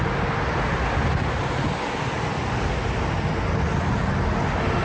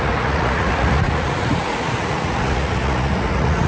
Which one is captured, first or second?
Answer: first